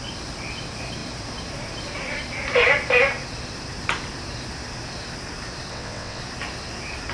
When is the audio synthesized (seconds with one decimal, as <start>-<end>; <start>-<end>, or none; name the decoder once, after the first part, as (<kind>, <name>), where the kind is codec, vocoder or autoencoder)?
5.7-6.2 (vocoder, WaveNeXt)